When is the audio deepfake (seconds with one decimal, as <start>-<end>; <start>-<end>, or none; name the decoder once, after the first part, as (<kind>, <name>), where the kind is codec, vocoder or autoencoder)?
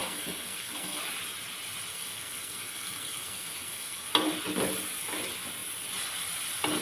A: 0.0-1.0 (codec, SNAC); 1.9-4.1